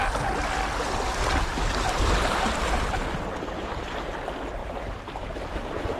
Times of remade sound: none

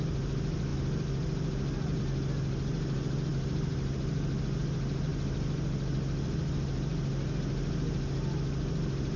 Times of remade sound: none

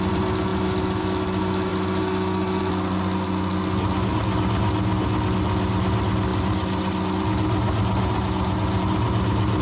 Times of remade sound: none

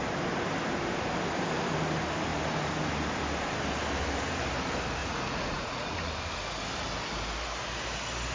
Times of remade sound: 5.0-6.1 (vocoder, Vocos)

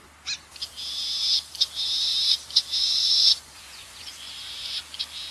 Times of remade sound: 2.8-4.8 (vocoder, Vocos)

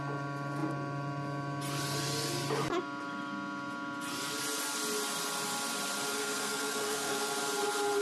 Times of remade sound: 6.2-7.3 (codec, SNAC)

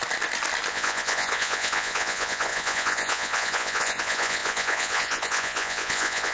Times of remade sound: 0.7-6.3 (vocoder, Vocos)

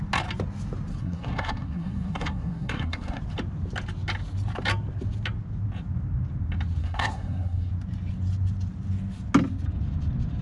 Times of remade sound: 0.9-3.2 (codec, SNAC); 6.8-7.7